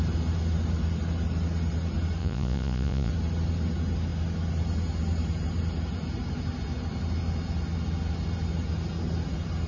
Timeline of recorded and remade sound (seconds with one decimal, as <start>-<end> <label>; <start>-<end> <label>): 0.0-2.2 recorded; 2.2-3.1 remade; 3.1-9.7 recorded